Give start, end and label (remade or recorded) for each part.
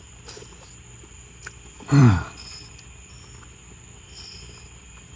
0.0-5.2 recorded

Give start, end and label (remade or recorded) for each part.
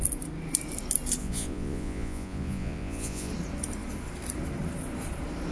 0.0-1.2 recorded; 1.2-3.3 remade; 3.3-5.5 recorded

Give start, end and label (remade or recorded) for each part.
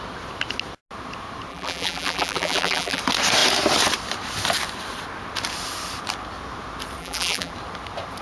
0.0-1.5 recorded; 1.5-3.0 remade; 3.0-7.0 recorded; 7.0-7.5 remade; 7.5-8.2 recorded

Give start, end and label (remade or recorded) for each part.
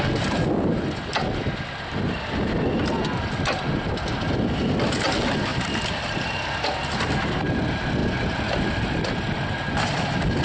0.0-5.5 recorded; 5.5-6.9 remade; 6.9-8.0 recorded; 8.0-9.0 remade; 9.0-10.4 recorded